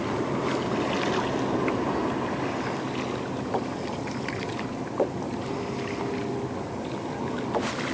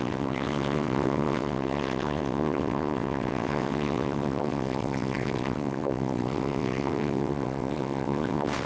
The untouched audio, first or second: first